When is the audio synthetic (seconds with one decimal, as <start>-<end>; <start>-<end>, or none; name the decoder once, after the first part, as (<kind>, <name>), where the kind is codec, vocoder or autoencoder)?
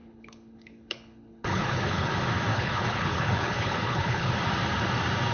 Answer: 0.0-2.1 (codec, HILCodec); 2.5-4.3